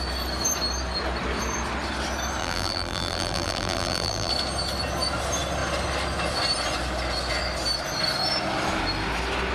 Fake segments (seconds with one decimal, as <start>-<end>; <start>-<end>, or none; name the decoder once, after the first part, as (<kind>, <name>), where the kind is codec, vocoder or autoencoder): 2.4-4.3 (vocoder, BigVGAN v2)